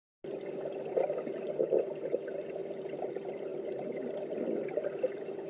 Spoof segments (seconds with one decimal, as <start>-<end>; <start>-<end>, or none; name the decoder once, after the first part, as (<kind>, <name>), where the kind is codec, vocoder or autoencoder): 2.6-3.1 (vocoder, BigVGAN v2); 3.5-5.5